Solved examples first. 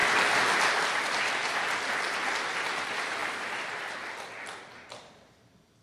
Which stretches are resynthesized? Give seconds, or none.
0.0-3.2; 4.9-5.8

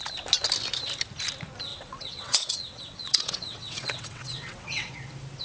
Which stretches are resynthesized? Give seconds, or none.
1.7-4.9

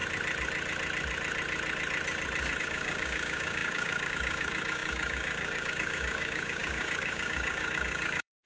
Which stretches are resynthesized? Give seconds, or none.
2.6-8.5